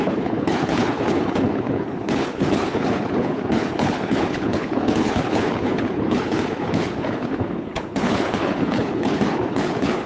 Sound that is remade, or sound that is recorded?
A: remade